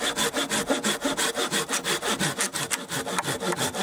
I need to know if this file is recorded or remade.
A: recorded